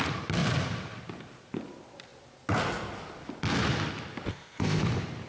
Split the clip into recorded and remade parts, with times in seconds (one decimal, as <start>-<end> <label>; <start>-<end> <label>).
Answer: 0.0-4.3 recorded; 4.3-4.8 remade; 4.8-5.3 recorded